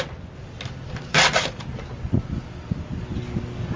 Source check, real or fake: real